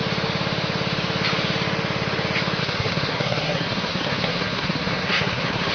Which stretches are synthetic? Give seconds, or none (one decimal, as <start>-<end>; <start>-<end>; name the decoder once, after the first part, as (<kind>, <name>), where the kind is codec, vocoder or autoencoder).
2.6-5.7 (codec, SNAC)

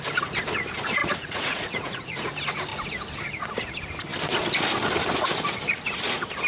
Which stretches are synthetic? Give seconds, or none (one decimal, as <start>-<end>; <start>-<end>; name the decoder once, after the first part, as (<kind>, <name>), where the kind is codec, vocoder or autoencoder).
1.0-2.3 (vocoder, Vocos)

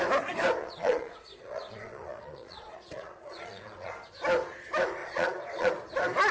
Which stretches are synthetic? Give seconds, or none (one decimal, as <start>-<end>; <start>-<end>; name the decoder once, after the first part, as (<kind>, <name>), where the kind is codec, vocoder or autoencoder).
0.6-3.9 (vocoder, Vocos); 5.0-5.7

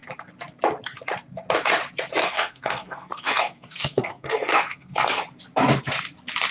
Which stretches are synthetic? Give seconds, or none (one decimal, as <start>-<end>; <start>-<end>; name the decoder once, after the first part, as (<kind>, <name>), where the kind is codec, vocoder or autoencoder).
2.2-5.2 (codec, SNAC)

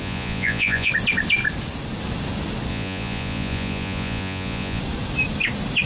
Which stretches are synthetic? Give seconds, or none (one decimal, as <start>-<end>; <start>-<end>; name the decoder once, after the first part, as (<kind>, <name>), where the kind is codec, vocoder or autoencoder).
0.0-0.9 (vocoder, Vocos); 2.7-4.8

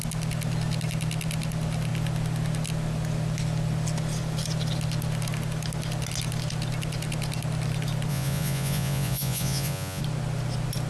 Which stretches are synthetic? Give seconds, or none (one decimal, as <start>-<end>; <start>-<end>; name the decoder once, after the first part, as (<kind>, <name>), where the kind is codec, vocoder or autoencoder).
8.1-10.0 (vocoder, Vocos)

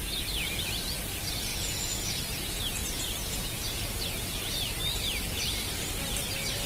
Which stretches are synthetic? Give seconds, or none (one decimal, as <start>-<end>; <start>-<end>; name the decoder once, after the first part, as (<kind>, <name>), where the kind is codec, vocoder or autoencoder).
1.5-2.2 (vocoder, Vocos); 2.8-4.5